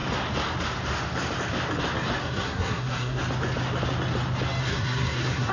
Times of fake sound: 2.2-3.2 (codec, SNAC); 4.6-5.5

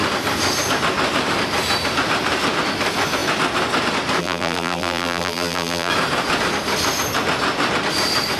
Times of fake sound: 4.2-5.9 (vocoder, BigVGAN v2)

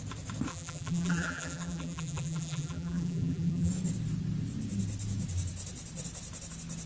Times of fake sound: 0.5-3.7 (vocoder, BigVGAN v2)

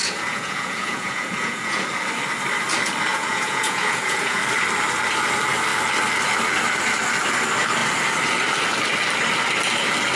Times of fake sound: 0.0-1.8 (vocoder, Vocos); 3.1-4.4

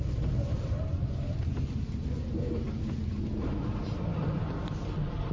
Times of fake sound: none

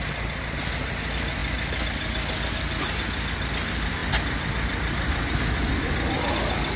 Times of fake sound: none